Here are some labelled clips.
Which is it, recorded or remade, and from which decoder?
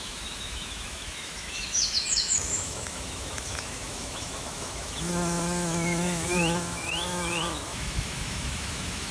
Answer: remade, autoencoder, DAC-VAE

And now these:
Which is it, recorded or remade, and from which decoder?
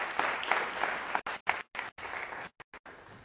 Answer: recorded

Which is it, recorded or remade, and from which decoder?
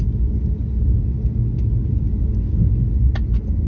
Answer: recorded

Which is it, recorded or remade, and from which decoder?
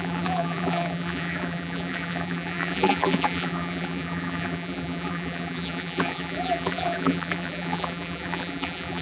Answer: remade, vocoder, BigVGAN v2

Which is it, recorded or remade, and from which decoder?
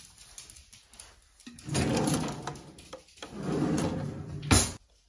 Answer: recorded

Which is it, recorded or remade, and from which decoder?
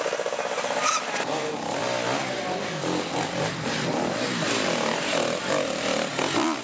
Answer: recorded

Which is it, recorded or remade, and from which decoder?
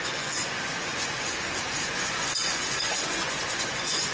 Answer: remade, vocoder, Vocos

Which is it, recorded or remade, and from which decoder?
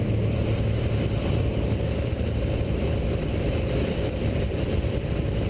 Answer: remade, vocoder, BigVGAN v2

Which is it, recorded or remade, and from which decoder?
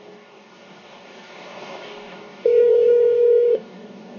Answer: remade, codec, DAC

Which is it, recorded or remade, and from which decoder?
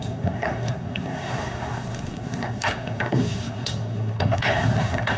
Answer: remade, codec, SNAC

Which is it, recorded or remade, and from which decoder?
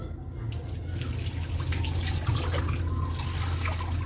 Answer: recorded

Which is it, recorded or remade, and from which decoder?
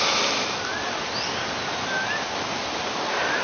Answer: recorded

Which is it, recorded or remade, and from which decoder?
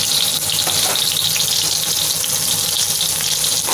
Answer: recorded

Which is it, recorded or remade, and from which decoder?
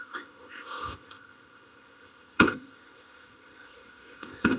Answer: remade, codec, ZipCodec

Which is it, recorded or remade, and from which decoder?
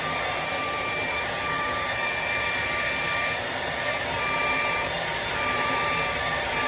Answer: remade, vocoder, BigVGAN v2